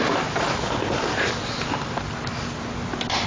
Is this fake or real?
real